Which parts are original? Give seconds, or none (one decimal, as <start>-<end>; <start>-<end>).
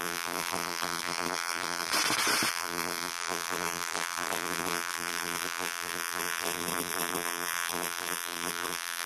1.9-2.5